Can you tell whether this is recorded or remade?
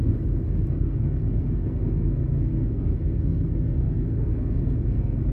remade